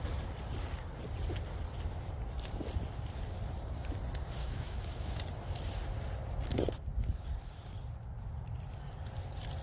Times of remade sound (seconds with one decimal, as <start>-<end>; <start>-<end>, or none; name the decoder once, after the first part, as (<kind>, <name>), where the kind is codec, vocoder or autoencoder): 4.4-5.2 (autoencoder, DAC-VAE)